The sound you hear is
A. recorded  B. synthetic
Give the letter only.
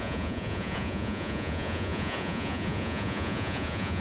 B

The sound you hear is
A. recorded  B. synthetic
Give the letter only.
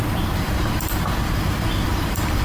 B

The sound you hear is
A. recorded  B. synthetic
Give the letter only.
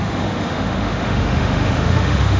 B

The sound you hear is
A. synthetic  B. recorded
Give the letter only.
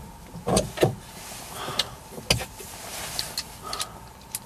B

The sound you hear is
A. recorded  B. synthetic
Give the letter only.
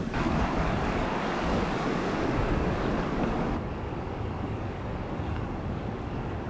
B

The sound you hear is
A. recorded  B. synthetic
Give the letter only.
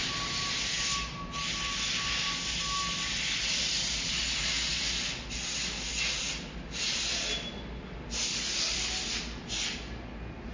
A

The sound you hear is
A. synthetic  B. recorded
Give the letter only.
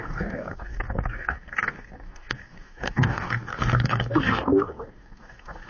A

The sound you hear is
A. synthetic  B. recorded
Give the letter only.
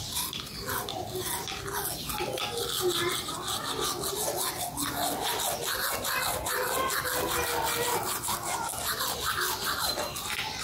B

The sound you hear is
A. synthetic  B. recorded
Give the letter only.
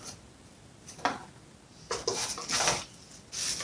B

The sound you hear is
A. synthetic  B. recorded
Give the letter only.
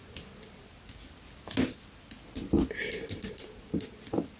B